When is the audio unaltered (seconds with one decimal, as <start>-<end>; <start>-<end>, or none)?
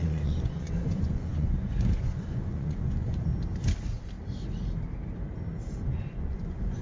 3.3-5.8